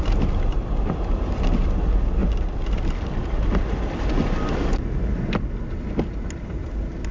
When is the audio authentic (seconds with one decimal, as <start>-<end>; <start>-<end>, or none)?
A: 0.0-7.1